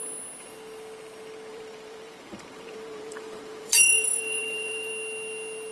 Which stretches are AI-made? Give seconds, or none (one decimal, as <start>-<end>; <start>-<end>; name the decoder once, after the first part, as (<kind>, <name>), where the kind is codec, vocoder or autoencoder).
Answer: 1.5-4.9 (vocoder, BigVGAN v2)

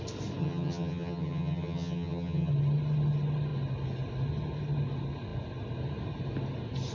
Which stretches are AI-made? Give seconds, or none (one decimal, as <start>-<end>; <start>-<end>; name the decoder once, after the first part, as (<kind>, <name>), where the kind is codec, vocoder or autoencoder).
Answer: 0.4-2.5 (vocoder, HiFi-GAN)

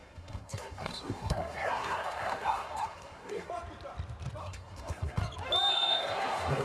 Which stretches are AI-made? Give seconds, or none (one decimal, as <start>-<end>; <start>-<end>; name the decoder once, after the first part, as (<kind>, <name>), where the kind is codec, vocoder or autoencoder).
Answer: 0.0-3.5 (codec, SNAC); 4.4-5.2; 5.7-6.6

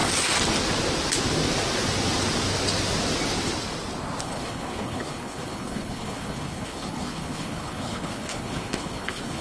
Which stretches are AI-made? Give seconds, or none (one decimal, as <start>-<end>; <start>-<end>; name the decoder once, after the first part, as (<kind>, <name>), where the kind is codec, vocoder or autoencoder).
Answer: 4.2-9.4 (codec, HILCodec)